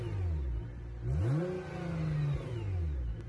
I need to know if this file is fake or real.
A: real